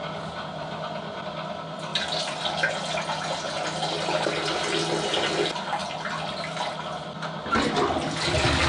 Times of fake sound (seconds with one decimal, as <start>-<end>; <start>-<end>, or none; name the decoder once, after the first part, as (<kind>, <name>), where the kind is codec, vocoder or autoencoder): none